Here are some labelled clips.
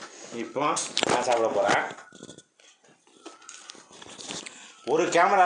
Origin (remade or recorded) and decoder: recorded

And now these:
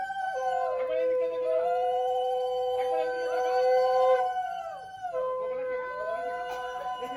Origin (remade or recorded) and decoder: recorded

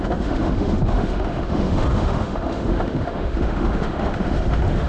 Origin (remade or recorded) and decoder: remade, autoencoder, DAC-VAE